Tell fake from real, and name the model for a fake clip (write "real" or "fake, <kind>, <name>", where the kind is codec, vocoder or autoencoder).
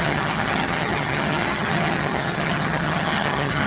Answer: fake, vocoder, HiFi-GAN